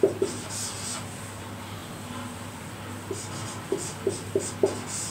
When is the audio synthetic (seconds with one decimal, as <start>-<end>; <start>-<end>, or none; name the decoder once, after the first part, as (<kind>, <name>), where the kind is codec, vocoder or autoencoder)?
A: none